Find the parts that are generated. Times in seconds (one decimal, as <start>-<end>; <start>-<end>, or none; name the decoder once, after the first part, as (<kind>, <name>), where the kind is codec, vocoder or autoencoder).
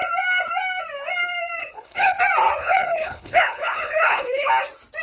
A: 1.6-2.2 (codec, HILCodec); 2.6-4.5